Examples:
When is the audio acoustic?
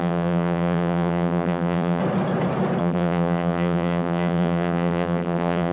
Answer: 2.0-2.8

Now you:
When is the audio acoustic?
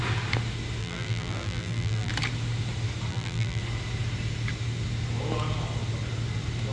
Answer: 0.0-0.8; 2.1-3.1; 3.6-6.7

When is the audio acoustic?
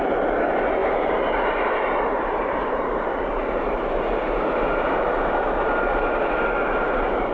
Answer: 4.2-5.0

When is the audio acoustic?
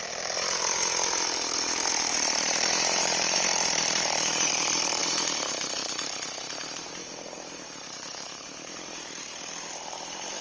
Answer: none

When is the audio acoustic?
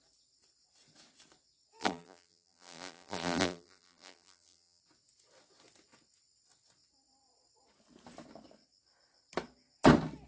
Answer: 0.0-1.8; 4.8-10.3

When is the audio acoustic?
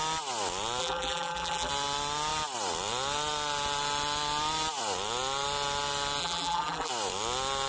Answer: 0.0-0.8; 1.7-6.2; 6.9-7.7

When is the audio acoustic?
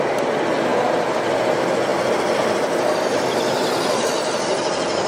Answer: 0.0-0.7; 1.3-5.1